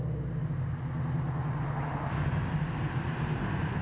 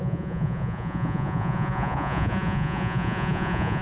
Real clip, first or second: first